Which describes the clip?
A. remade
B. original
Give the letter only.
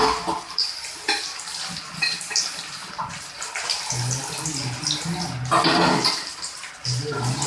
B